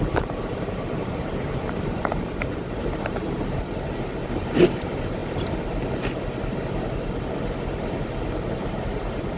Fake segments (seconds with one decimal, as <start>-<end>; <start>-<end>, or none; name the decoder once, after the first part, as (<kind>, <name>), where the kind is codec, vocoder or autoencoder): 0.0-5.2 (vocoder, BigVGAN v2); 8.5-9.4